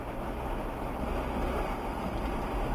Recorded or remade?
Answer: recorded